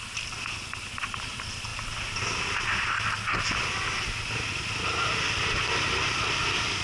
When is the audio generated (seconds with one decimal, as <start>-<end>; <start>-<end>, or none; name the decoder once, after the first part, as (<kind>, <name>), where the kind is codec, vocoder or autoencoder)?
none